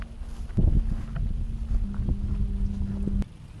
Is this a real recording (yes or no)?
yes